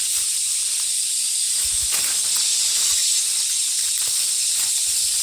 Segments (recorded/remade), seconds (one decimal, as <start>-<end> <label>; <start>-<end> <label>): 0.0-3.0 recorded; 3.0-4.0 remade; 4.0-5.2 recorded